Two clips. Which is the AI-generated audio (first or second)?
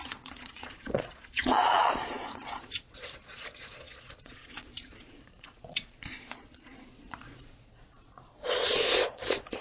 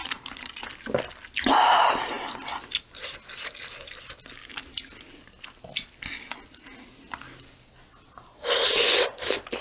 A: first